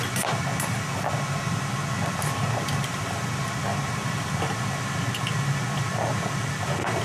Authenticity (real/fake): real